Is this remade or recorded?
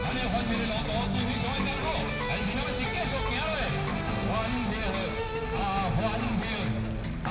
recorded